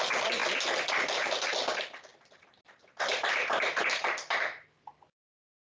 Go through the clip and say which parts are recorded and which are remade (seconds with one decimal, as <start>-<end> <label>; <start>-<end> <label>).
0.0-2.1 recorded; 2.1-4.9 remade; 4.9-5.6 recorded